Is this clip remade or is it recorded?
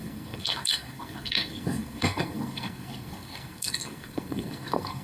remade